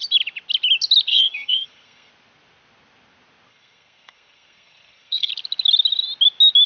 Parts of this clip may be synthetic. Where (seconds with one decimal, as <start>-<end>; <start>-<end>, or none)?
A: 1.1-2.1; 3.5-5.3